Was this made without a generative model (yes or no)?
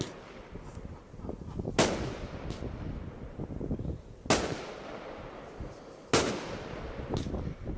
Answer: yes